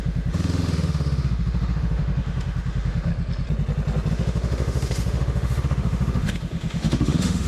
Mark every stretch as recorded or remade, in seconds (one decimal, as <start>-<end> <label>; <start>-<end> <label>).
0.0-3.1 remade; 3.1-4.1 recorded; 4.1-7.5 remade